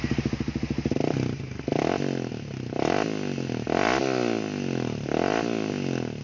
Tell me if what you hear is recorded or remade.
recorded